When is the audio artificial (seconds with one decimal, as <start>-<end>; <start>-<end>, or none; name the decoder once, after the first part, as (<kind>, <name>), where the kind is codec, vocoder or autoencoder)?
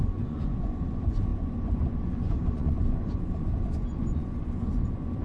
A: 0.0-5.2 (vocoder, Vocos)